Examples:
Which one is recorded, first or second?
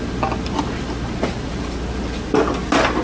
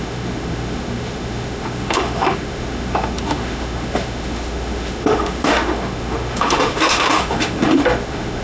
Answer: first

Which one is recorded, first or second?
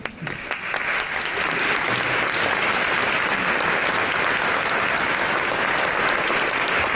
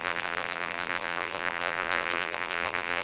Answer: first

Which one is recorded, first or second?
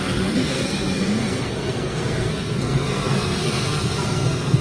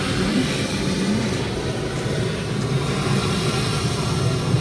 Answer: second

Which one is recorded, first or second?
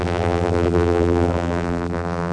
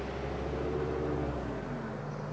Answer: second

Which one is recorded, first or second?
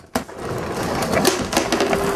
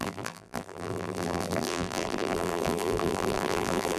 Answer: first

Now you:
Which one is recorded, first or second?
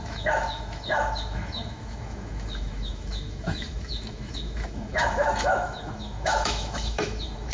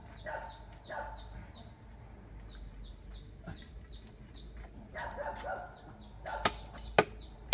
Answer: second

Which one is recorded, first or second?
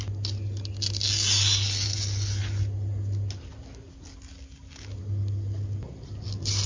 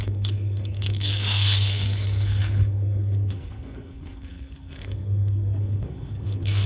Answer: first